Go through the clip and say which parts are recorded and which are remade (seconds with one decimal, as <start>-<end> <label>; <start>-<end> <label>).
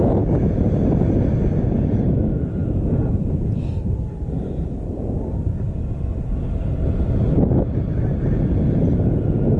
0.0-9.6 recorded